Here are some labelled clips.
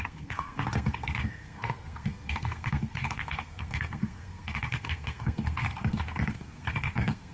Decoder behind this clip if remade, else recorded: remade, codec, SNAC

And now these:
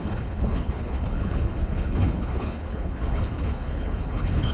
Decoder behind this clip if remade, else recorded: remade, codec, HILCodec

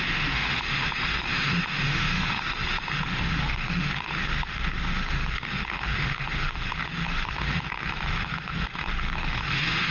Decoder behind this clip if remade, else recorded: remade, autoencoder, DAC-VAE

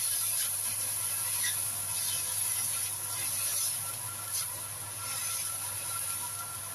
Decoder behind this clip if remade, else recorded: recorded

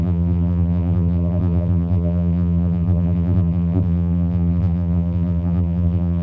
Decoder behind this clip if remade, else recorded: remade, vocoder, BigVGAN v2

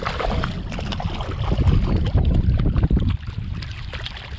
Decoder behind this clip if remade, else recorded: recorded